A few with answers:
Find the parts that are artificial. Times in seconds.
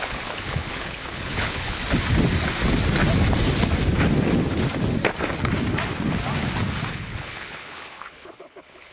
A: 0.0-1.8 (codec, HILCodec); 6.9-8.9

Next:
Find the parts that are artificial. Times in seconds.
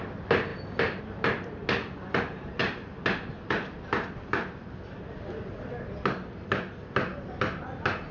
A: none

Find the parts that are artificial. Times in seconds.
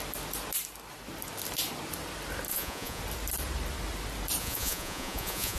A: 2.5-3.0 (vocoder, Vocos); 4.4-5.6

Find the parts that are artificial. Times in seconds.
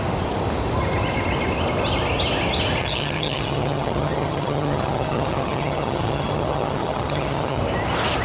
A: 2.8-7.6 (vocoder, HiFi-GAN)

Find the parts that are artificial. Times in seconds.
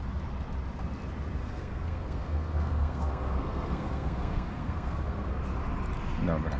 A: 1.4-5.4 (codec, SNAC)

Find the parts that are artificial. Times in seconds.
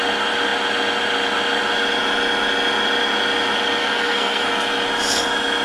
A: 3.8-4.5 (codec, SNAC)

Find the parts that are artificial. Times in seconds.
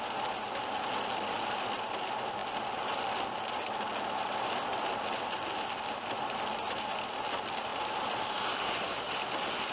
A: none